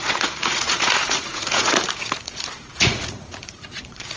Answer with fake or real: fake